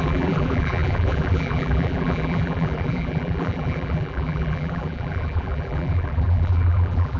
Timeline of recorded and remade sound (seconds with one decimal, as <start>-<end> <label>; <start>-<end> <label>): 0.0-7.2 remade